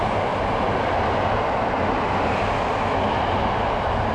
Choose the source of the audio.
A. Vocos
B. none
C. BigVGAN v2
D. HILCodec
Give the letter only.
B